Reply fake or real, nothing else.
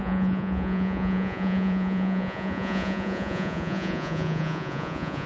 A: fake